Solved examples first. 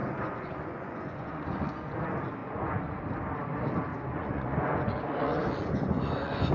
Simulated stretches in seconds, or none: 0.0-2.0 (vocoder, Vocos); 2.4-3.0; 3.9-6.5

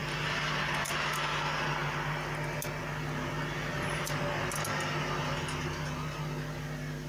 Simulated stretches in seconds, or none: none

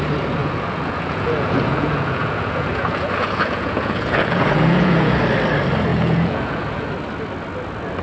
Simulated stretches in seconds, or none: 0.4-5.2 (vocoder, Vocos); 5.9-6.9

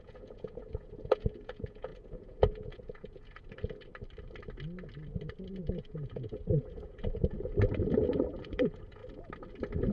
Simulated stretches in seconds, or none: 0.0-3.9 (vocoder, Vocos); 5.6-9.0

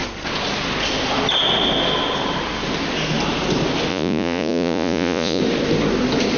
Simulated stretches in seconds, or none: 3.9-5.4 (vocoder, Vocos)

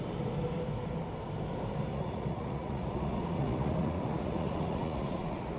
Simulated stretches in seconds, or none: 1.9-5.6 (vocoder, Vocos)